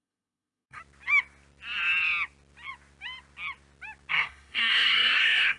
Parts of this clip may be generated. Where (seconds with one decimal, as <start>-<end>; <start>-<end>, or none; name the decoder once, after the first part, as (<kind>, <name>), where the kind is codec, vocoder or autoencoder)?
0.0-0.8 (codec, SNAC); 4.1-5.6